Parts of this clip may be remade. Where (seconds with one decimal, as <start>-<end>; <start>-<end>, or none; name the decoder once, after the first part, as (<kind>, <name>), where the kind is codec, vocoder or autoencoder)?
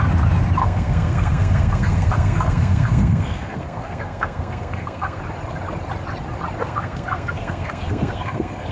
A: 0.6-5.2 (codec, SNAC); 6.6-8.7